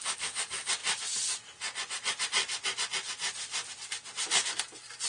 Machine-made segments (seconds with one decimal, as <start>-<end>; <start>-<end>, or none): none